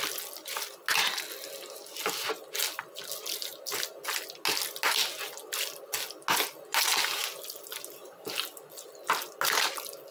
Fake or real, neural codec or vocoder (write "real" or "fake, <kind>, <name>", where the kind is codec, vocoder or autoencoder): real